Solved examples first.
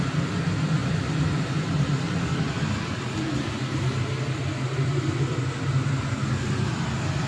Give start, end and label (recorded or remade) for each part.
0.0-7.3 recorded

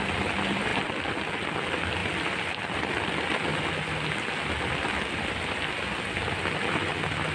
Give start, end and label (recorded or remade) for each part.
0.0-7.3 recorded

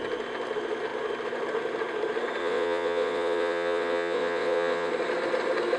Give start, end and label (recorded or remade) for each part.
0.0-2.4 recorded; 2.4-4.9 remade; 4.9-5.8 recorded